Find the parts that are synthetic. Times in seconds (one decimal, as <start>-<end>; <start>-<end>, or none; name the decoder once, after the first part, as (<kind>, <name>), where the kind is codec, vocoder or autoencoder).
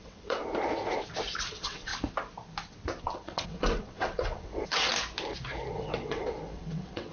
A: 0.0-0.4 (vocoder, WaveNeXt); 1.5-1.9; 3.0-4.9; 5.7-7.1